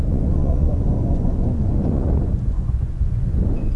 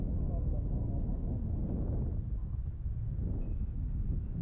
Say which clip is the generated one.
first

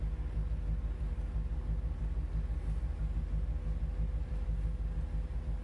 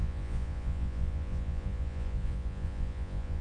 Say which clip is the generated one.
second